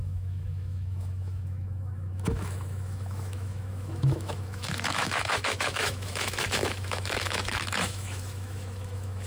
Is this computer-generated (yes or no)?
yes